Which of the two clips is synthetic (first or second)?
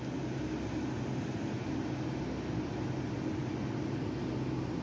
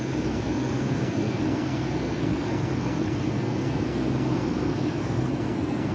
second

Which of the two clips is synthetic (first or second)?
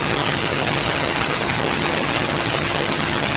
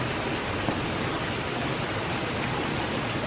first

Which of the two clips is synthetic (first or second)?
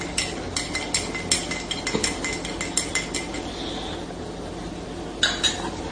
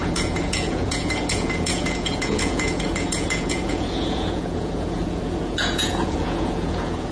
second